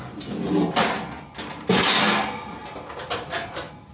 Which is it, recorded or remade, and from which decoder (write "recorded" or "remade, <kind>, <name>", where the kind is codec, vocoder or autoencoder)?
recorded